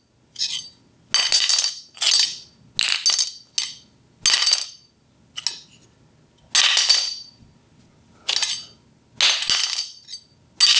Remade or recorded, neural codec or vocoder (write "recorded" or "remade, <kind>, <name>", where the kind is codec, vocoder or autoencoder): recorded